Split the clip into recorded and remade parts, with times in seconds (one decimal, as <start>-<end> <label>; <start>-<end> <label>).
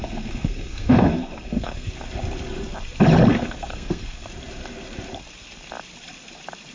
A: 0.0-1.9 remade; 1.9-3.3 recorded; 3.3-4.3 remade; 4.3-6.7 recorded